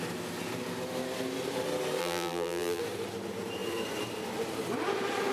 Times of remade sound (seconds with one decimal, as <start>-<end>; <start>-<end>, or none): 2.0-2.8